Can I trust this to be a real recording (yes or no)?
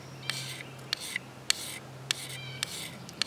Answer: yes